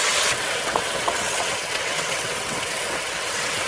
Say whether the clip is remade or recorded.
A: remade